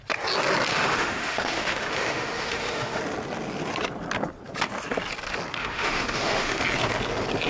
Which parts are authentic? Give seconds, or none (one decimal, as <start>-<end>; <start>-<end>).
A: 0.0-0.7; 3.0-5.6; 6.6-7.5